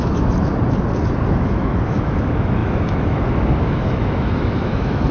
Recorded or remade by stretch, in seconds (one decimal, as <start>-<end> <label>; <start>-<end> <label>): 0.0-0.5 remade; 0.5-1.2 recorded; 1.2-5.1 remade